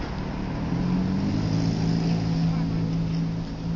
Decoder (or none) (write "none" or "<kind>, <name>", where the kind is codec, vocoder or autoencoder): none